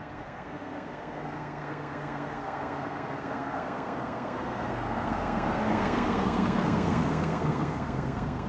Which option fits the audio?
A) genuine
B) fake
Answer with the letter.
B